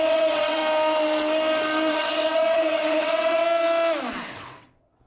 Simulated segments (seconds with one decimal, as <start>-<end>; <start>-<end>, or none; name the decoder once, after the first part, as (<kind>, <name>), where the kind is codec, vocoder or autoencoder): 0.0-0.6 (vocoder, WaveNeXt); 1.9-3.4; 4.2-5.1